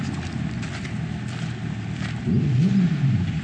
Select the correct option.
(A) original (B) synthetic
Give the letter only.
A